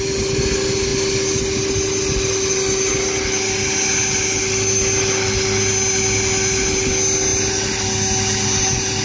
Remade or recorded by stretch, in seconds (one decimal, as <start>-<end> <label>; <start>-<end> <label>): 0.0-9.0 recorded